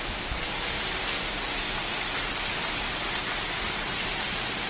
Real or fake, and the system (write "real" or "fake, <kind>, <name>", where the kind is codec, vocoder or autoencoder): real